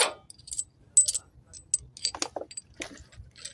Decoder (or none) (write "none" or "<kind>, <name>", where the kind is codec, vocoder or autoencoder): none